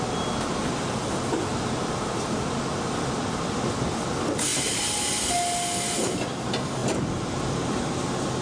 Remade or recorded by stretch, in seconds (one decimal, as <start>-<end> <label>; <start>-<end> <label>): 0.0-8.4 recorded

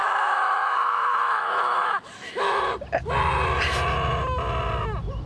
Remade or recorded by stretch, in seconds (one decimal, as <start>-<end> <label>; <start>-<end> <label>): 0.0-2.6 remade; 2.6-5.3 recorded

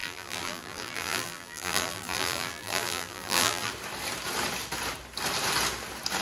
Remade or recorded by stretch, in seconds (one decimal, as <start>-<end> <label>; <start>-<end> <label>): 0.0-3.7 remade; 3.7-6.2 recorded

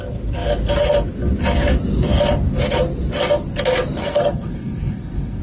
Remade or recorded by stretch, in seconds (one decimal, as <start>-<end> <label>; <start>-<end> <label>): 0.0-4.0 recorded; 4.0-5.4 remade

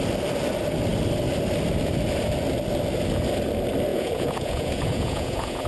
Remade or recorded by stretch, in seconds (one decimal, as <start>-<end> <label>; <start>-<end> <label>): 0.0-3.9 recorded; 3.9-5.7 remade